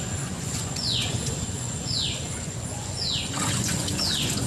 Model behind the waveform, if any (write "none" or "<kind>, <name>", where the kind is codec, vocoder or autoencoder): vocoder, Vocos